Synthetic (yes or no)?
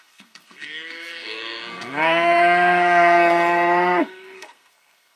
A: yes